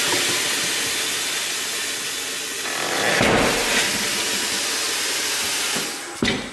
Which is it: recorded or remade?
recorded